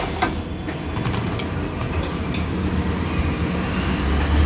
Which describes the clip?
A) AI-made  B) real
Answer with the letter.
B